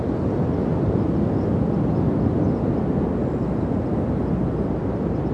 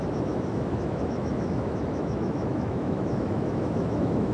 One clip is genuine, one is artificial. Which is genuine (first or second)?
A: first